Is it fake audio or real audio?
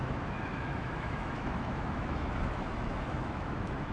fake